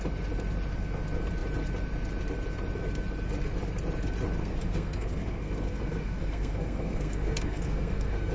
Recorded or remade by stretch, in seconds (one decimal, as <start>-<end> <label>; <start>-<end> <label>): 0.0-4.4 recorded; 4.4-8.3 remade

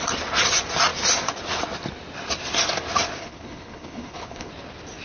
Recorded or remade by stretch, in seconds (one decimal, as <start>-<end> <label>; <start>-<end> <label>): 0.0-3.2 recorded; 3.2-4.5 remade; 4.5-5.0 recorded

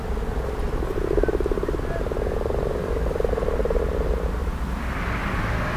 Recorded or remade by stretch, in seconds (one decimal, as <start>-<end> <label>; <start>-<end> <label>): 0.0-3.3 remade; 3.3-5.8 recorded

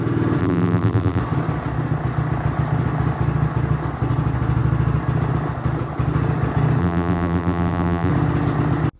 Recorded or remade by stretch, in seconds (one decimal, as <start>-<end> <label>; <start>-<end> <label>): 0.0-0.4 recorded; 0.4-1.2 remade; 1.2-6.8 recorded; 6.8-8.1 remade; 8.1-9.0 recorded

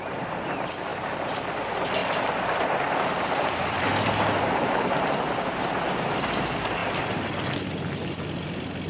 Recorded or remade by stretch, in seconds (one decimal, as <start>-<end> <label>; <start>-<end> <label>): 0.0-2.0 recorded; 2.0-4.7 remade; 4.7-8.9 recorded

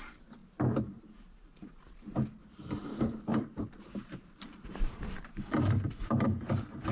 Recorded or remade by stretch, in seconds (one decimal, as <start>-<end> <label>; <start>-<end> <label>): 0.0-0.4 recorded; 0.4-1.0 remade; 1.0-2.4 recorded; 2.4-6.5 remade; 6.5-6.9 recorded